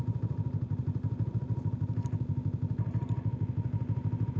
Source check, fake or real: real